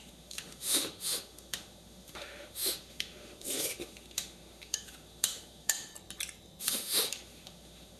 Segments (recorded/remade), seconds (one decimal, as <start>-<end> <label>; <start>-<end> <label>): 0.0-5.9 remade; 5.9-6.6 recorded; 6.6-8.0 remade